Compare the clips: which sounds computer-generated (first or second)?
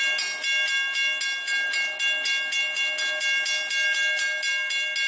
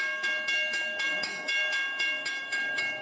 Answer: second